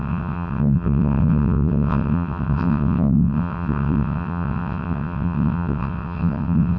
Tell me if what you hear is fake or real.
fake